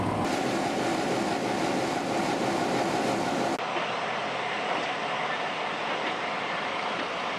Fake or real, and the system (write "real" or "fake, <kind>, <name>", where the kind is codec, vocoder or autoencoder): real